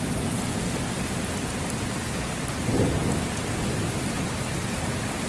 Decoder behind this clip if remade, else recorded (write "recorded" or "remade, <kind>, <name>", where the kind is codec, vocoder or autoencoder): recorded